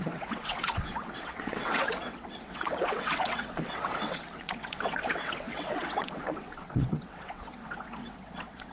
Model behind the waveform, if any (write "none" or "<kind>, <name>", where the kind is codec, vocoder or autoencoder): vocoder, WaveNeXt